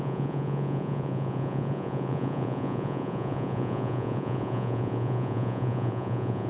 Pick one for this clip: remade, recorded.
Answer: remade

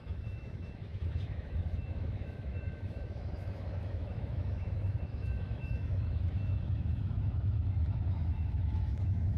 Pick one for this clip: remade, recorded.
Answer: remade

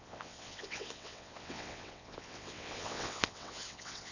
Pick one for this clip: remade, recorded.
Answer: remade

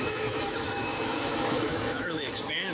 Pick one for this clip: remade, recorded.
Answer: remade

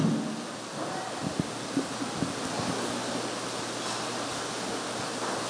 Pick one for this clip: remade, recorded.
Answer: recorded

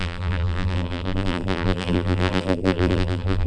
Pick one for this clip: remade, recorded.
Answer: remade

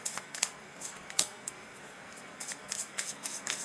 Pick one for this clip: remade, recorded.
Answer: remade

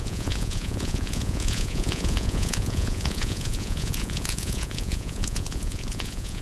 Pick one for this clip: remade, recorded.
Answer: remade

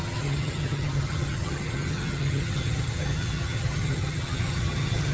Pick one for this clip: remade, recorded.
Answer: remade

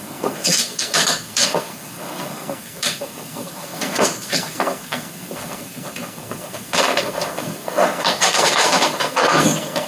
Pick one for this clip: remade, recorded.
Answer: remade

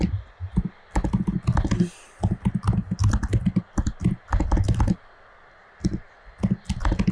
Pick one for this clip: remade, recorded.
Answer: recorded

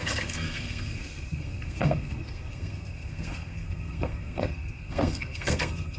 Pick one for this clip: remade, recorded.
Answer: remade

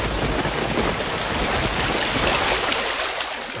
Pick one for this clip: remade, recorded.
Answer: recorded